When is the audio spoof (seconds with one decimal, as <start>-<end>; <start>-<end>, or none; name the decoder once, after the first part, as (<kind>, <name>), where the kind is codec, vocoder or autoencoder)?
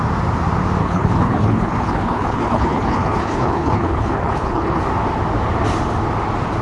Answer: 0.8-4.8 (codec, HILCodec)